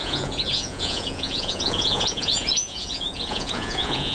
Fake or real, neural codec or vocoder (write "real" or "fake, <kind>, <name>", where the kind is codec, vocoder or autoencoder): fake, vocoder, Vocos